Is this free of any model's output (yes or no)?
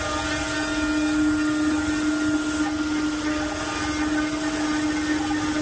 yes